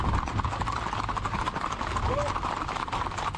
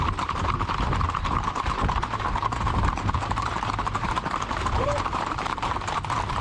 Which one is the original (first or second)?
first